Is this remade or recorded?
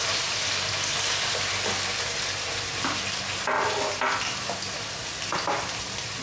recorded